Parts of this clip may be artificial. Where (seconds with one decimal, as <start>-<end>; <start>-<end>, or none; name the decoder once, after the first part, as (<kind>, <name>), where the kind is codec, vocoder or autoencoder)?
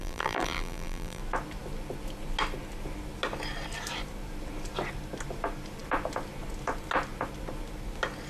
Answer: 0.0-1.2 (vocoder, BigVGAN v2)